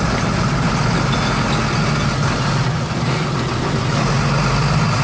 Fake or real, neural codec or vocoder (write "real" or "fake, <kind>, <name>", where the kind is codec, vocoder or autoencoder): real